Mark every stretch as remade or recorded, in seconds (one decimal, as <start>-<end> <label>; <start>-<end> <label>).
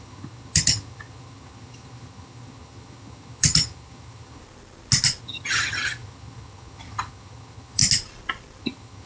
0.0-4.4 remade; 4.4-5.2 recorded; 5.2-7.8 remade; 7.8-8.6 recorded; 8.6-9.1 remade